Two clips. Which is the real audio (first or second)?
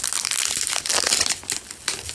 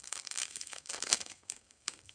first